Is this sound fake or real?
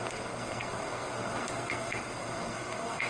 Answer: fake